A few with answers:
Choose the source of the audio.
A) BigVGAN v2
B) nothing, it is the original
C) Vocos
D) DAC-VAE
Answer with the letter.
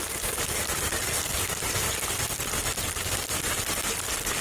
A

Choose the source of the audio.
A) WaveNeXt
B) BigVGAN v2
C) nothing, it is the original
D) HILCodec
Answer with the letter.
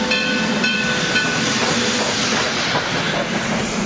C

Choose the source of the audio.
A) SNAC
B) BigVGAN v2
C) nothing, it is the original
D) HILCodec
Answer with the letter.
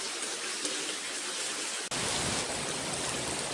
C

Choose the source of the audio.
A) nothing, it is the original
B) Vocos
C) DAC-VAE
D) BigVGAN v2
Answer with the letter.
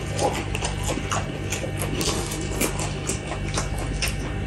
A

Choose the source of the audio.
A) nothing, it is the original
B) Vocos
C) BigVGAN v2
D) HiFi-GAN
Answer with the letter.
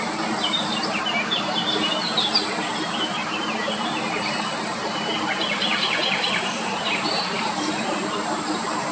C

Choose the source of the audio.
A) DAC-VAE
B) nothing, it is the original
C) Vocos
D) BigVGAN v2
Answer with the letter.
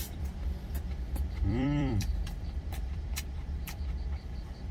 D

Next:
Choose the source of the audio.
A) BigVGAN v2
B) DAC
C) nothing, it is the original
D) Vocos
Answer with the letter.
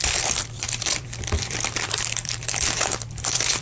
A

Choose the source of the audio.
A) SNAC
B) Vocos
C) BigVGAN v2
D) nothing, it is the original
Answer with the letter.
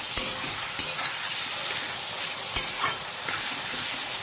D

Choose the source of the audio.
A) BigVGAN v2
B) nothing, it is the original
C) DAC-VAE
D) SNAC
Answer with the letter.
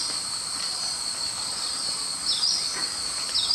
A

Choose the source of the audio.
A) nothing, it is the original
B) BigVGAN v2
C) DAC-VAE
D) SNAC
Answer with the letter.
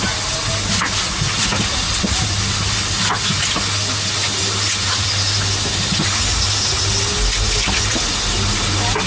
A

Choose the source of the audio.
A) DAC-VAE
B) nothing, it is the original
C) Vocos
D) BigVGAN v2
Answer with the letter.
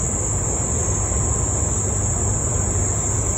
B